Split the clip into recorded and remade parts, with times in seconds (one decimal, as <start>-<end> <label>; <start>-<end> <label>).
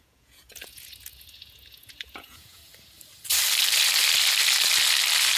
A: 0.0-2.6 remade; 2.6-5.4 recorded